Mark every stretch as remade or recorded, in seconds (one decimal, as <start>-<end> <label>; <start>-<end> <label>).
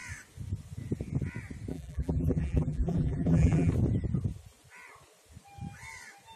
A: 0.0-1.7 recorded; 1.7-3.7 remade; 3.7-6.4 recorded